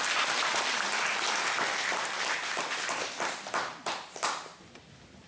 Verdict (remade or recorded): recorded